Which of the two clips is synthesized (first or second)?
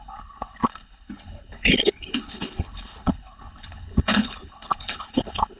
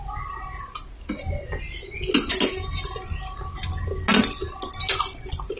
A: first